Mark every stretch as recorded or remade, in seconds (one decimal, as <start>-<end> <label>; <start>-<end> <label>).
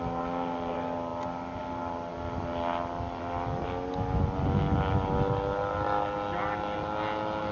0.0-7.5 recorded